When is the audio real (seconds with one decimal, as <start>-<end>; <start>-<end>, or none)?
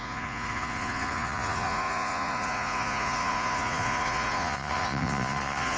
none